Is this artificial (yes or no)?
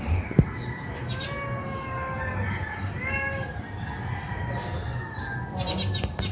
no